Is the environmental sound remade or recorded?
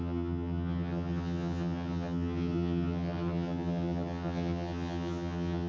remade